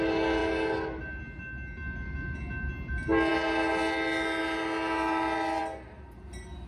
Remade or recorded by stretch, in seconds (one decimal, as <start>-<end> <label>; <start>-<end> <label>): 0.0-6.7 recorded